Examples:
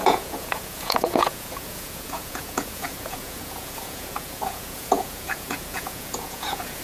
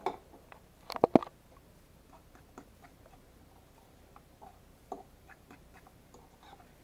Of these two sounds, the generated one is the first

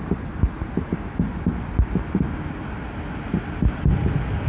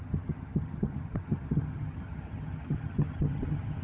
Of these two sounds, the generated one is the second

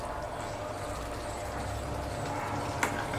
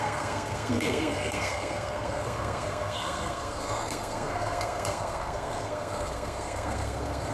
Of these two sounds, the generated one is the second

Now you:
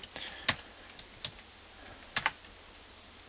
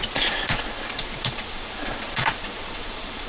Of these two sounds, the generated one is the second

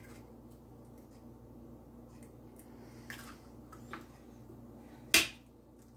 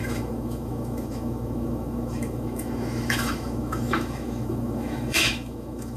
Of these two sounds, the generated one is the second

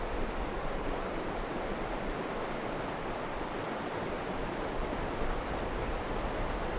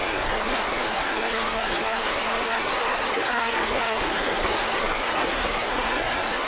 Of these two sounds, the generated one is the second